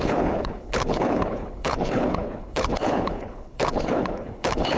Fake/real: fake